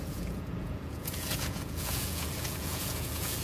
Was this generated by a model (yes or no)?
yes